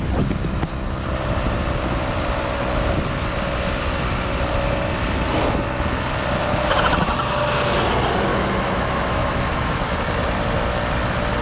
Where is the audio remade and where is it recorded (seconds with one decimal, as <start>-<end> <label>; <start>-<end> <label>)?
0.0-8.3 recorded; 8.3-10.0 remade; 10.0-11.4 recorded